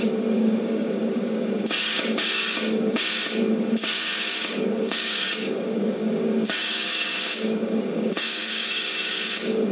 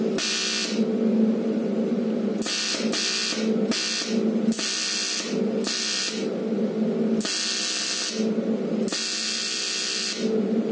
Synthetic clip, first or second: first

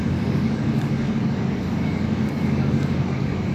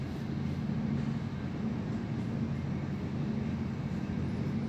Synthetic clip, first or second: first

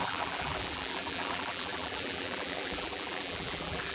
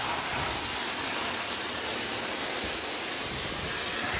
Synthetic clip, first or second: first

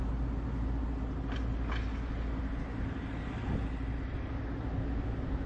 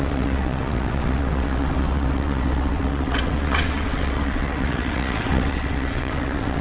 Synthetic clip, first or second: second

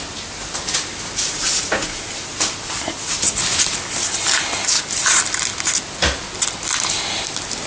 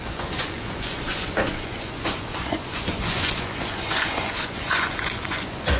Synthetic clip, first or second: second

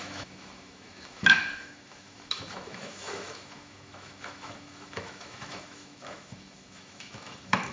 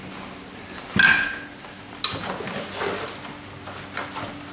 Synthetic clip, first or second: first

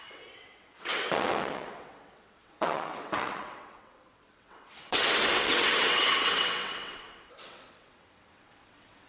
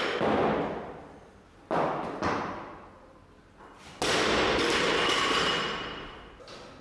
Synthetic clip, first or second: first